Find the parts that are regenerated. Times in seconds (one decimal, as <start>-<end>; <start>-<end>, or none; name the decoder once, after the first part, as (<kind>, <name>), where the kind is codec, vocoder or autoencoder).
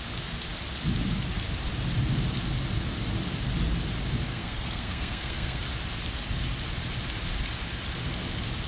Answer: 4.3-5.6 (codec, SNAC)